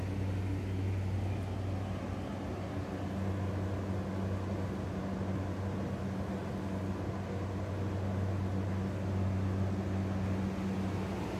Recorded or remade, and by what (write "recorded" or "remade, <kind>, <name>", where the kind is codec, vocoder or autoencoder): recorded